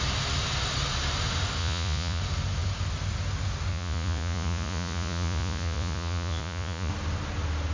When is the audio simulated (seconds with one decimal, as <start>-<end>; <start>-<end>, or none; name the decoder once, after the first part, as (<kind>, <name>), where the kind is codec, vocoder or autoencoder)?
1.6-2.2 (vocoder, Vocos); 3.7-6.9